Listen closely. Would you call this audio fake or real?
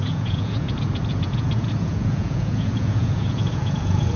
fake